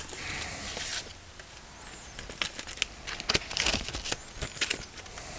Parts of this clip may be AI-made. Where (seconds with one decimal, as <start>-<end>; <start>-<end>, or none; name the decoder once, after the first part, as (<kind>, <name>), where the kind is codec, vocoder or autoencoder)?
none